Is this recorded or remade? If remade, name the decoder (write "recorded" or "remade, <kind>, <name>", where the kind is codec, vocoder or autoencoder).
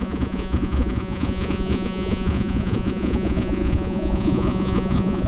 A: remade, vocoder, Vocos